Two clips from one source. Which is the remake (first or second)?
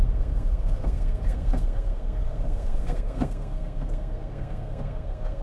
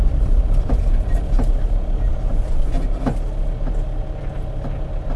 first